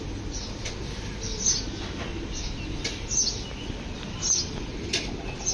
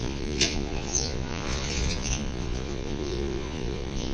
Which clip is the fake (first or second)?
second